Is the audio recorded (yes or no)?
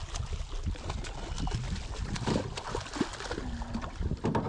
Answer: yes